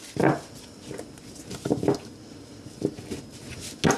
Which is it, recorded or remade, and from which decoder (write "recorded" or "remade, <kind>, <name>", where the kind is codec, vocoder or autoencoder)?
recorded